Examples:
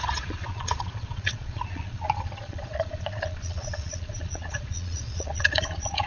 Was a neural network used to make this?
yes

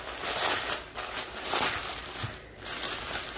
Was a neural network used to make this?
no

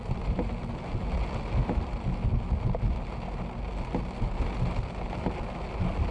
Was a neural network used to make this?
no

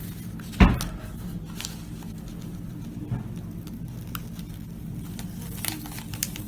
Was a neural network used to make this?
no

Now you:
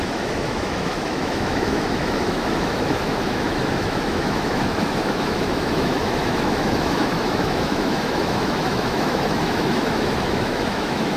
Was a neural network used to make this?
yes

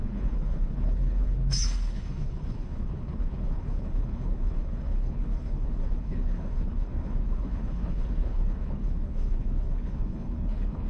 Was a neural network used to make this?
yes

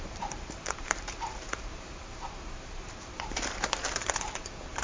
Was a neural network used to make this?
yes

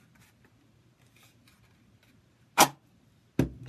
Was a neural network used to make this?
no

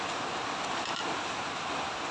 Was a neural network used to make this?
no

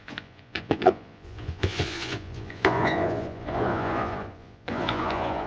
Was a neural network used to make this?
yes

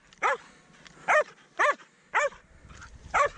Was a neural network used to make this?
no